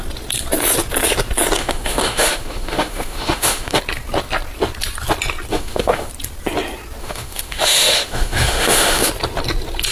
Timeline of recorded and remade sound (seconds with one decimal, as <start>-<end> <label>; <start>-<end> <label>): 0.0-1.6 recorded; 1.6-3.8 remade; 3.8-5.5 recorded; 5.5-6.1 remade; 6.1-7.0 recorded; 7.0-9.1 remade; 9.1-9.9 recorded